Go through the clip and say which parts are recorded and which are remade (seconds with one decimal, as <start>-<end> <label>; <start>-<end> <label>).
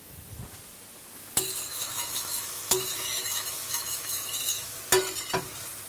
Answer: 0.0-1.7 recorded; 1.7-4.8 remade; 4.8-5.9 recorded